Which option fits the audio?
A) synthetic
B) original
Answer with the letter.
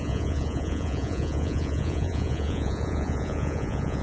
A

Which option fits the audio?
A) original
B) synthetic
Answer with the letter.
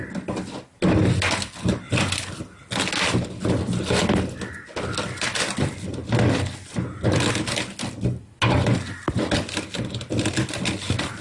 A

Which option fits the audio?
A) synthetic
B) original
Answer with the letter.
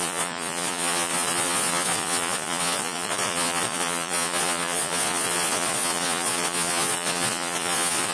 A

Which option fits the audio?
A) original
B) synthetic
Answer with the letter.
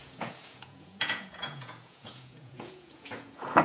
B